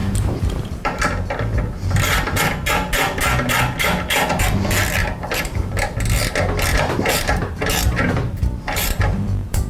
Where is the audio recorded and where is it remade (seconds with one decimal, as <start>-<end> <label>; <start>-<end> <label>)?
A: 0.0-1.0 remade; 1.0-5.0 recorded; 5.0-5.7 remade; 5.7-6.7 recorded; 6.7-9.7 remade